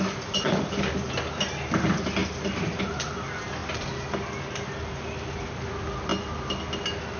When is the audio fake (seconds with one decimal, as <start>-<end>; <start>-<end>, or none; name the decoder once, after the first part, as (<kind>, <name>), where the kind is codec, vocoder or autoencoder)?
none